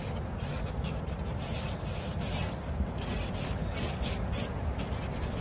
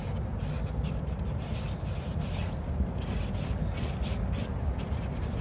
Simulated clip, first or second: first